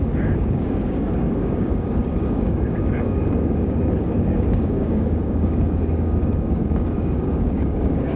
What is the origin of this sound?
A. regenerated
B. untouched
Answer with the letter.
A